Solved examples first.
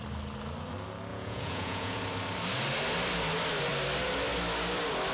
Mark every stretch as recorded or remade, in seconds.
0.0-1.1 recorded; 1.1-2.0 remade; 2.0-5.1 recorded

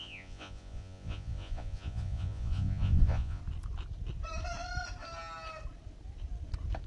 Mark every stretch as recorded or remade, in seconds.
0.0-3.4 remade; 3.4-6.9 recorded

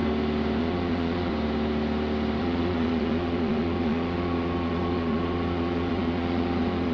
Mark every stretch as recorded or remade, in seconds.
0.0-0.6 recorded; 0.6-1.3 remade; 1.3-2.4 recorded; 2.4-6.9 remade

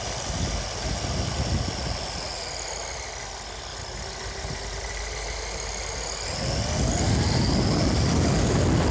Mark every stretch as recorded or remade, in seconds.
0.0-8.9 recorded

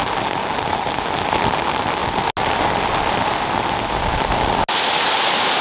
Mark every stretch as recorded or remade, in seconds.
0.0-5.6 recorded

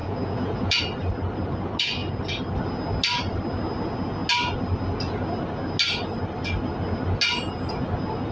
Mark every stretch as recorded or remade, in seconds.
0.0-0.8 remade; 0.8-8.3 recorded